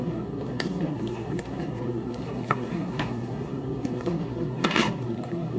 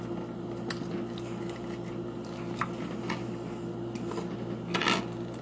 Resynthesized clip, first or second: first